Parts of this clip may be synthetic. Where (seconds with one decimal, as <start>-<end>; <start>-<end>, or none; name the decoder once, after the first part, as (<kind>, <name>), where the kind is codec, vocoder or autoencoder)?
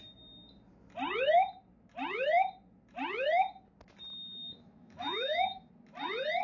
4.1-5.7 (autoencoder, DAC-VAE)